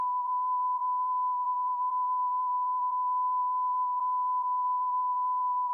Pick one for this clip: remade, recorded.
remade